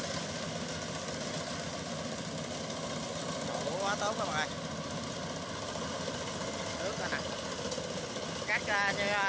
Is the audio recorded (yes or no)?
yes